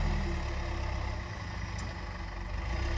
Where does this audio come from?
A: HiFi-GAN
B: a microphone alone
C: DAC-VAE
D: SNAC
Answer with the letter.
B